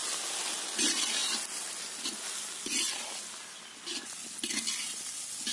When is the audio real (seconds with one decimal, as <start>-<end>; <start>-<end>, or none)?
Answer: 0.0-5.5